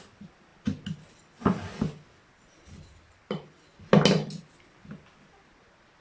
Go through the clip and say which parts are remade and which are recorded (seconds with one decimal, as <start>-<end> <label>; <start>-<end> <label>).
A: 0.0-6.0 recorded